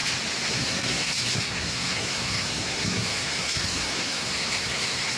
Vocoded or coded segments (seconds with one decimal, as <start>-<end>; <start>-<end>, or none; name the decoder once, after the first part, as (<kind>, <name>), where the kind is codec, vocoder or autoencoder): 0.5-5.2 (codec, SNAC)